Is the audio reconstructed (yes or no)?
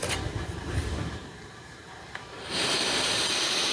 yes